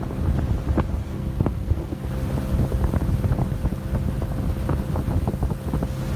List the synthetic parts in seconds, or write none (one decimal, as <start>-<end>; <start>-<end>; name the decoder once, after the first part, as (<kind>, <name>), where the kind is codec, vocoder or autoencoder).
1.0-2.1 (codec, SNAC)